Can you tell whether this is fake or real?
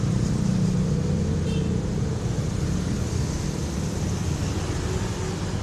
real